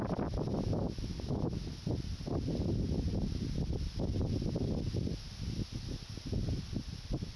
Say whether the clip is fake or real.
real